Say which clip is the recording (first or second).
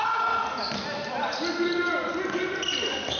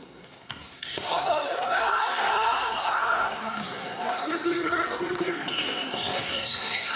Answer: first